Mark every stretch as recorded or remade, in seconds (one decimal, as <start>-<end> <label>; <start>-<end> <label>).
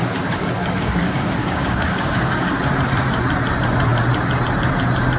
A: 0.0-2.6 remade; 2.6-5.2 recorded